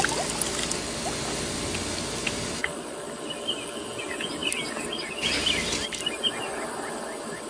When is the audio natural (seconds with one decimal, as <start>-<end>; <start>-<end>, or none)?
0.0-7.5